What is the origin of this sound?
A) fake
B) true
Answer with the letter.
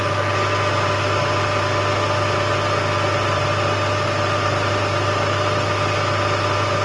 B